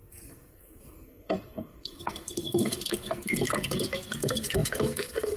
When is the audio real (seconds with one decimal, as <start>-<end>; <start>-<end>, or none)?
none